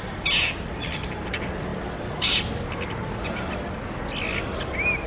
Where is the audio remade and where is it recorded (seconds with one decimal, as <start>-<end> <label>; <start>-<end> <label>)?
0.0-5.1 recorded